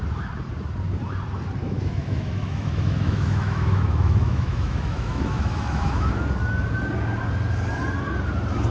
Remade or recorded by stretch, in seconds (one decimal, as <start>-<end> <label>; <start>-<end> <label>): 0.0-1.6 recorded; 1.6-6.0 remade; 6.0-8.7 recorded